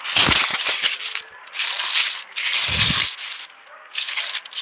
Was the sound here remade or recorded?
recorded